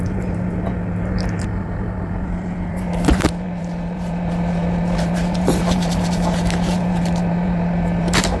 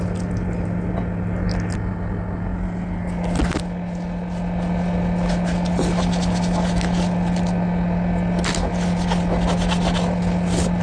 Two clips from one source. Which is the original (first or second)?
second